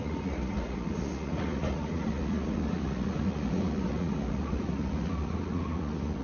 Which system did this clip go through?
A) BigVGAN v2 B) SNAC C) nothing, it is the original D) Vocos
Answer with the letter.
D